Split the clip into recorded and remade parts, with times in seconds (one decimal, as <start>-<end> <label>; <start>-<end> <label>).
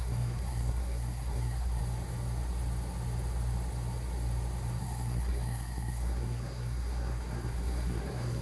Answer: 0.0-1.8 remade; 1.8-4.8 recorded; 4.8-8.4 remade